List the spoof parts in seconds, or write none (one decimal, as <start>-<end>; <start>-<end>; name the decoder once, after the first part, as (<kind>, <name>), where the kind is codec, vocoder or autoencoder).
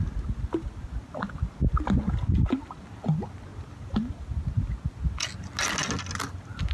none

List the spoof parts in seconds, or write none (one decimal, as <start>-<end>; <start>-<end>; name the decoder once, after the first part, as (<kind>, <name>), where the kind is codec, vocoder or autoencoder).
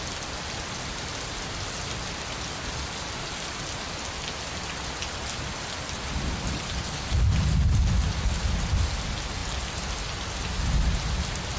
none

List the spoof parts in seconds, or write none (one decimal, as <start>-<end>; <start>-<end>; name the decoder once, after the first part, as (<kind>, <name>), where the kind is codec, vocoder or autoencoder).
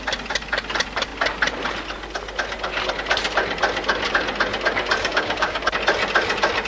5.0-5.6 (codec, DAC)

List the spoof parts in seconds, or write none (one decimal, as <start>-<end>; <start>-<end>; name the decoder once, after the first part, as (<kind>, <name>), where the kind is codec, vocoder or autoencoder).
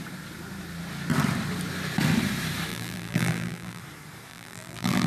2.7-3.8 (vocoder, BigVGAN v2); 4.3-5.1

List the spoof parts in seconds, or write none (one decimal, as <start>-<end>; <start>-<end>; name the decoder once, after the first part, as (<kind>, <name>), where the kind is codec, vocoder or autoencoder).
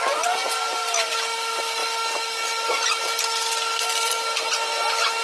none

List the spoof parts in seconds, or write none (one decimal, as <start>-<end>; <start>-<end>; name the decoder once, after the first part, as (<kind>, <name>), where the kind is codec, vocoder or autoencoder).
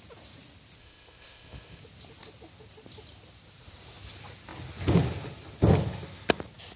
0.8-1.8 (codec, ZipCodec)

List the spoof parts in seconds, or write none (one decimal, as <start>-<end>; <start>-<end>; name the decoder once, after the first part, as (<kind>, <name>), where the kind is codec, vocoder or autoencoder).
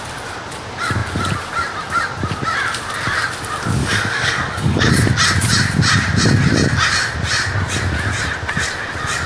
3.8-4.9 (codec, DAC)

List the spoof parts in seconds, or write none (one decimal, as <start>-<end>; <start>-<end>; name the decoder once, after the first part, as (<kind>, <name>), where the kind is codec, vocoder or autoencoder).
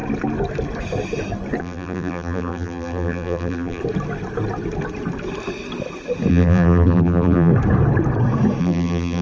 1.6-3.8 (vocoder, BigVGAN v2); 6.3-7.5; 8.6-9.2